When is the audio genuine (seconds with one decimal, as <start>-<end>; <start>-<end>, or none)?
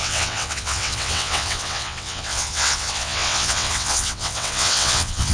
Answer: none